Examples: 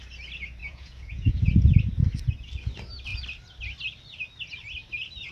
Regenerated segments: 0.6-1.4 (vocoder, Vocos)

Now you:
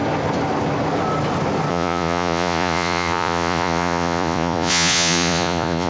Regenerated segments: 1.7-5.9 (vocoder, Vocos)

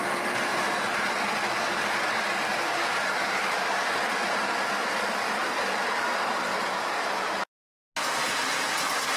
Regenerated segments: 0.5-1.1 (vocoder, BigVGAN v2); 6.5-7.5

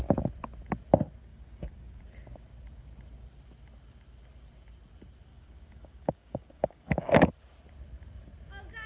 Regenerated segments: 1.2-2.0 (codec, DAC); 5.3-7.3

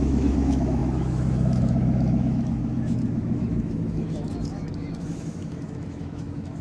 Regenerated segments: 0.0-6.6 (autoencoder, DAC-VAE)